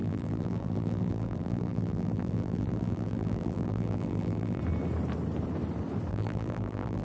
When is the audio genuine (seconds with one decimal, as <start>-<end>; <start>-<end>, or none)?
4.6-6.1